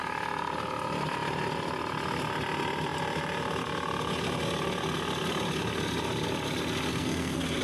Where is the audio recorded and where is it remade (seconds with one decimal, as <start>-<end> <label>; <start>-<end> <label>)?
0.0-6.9 recorded; 6.9-7.6 remade